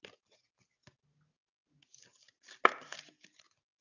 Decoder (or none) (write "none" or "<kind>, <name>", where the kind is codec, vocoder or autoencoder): none